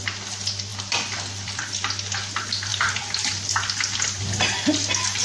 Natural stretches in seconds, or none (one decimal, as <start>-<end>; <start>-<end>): 0.0-0.7; 1.8-2.7; 4.2-5.2